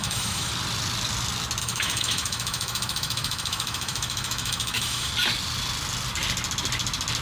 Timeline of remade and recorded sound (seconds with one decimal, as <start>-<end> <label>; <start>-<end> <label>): 0.0-0.5 remade; 0.5-1.6 recorded; 1.6-5.1 remade; 5.1-7.2 recorded